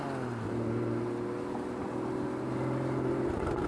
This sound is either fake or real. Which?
real